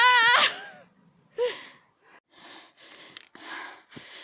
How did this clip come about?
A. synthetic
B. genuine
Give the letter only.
B